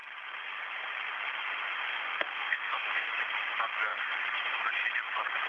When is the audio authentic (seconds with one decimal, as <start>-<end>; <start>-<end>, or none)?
0.0-1.9; 3.1-5.5